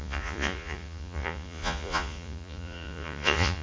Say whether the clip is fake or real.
fake